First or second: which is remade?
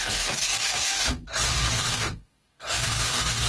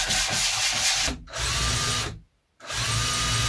first